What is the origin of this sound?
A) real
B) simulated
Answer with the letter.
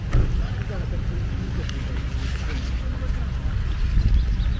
A